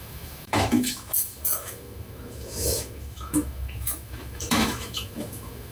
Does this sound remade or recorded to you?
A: remade